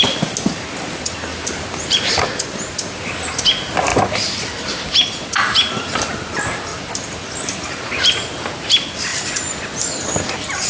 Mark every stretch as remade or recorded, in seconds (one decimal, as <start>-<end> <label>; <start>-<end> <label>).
0.0-1.3 recorded; 1.3-2.1 remade; 2.1-6.7 recorded; 6.7-7.4 remade; 7.4-10.7 recorded